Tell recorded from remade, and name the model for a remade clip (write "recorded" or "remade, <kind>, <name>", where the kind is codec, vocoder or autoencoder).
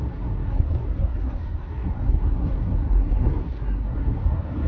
remade, codec, SNAC